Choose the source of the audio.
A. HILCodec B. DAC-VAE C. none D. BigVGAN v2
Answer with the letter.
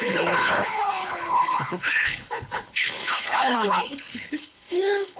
A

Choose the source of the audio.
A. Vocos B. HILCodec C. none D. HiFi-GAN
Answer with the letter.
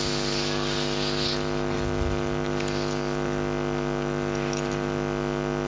C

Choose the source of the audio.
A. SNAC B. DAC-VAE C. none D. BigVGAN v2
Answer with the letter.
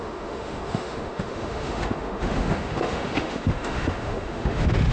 B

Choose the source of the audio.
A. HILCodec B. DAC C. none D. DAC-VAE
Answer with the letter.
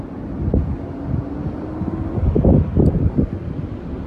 C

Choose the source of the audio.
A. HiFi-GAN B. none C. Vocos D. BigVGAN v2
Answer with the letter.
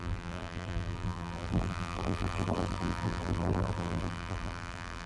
D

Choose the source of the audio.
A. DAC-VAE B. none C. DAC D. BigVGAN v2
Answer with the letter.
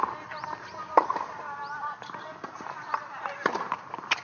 B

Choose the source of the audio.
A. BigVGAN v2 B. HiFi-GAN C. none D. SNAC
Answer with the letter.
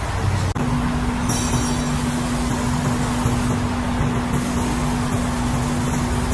C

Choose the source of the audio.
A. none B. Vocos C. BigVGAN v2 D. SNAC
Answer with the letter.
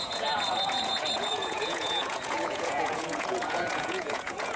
B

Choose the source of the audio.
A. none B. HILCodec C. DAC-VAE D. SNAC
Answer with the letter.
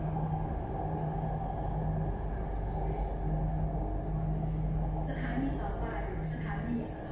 A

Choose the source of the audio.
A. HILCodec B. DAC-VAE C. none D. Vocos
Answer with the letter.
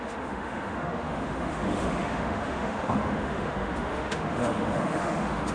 B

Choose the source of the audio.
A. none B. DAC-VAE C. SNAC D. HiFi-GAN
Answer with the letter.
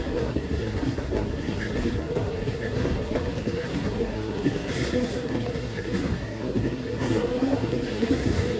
C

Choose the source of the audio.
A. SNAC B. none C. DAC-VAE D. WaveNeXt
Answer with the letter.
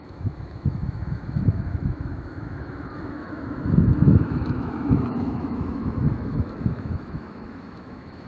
C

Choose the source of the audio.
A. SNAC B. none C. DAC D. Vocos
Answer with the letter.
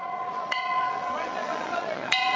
D